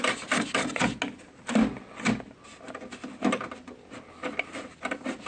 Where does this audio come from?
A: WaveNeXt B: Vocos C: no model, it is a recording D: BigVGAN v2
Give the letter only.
C